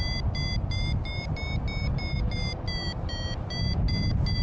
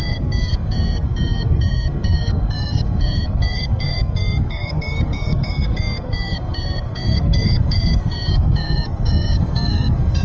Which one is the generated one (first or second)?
second